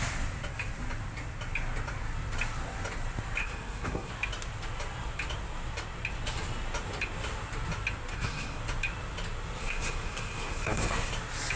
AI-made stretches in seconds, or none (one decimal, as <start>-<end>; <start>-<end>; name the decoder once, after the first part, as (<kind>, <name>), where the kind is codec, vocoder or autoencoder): 3.4-4.1 (codec, SNAC); 8.1-8.6; 9.6-11.1

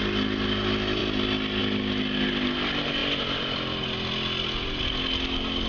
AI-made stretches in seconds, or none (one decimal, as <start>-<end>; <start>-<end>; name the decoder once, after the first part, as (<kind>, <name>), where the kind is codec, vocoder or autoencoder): none

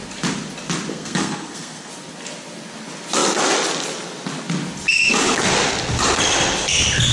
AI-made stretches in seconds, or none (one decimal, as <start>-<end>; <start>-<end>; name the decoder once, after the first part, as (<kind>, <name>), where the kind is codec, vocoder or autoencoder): 0.9-1.9 (codec, SNAC)

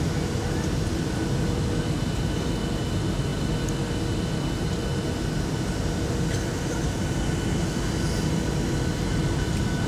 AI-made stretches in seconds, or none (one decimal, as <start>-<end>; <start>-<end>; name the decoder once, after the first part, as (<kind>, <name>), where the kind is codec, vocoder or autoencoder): none

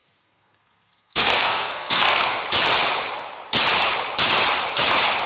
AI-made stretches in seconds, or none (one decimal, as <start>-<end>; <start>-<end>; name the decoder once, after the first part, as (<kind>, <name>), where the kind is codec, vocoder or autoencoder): 0.0-2.4 (codec, SNAC)

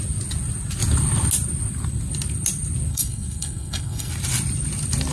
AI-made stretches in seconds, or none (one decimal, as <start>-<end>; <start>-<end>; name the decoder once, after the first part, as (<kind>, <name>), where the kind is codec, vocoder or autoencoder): 2.9-4.1 (codec, SNAC)